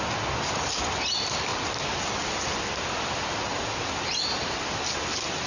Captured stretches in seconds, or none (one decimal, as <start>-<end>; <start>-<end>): 0.0-5.5